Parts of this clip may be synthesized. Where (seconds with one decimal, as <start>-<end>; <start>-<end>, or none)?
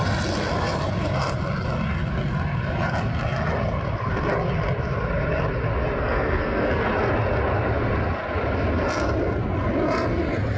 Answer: 6.0-6.9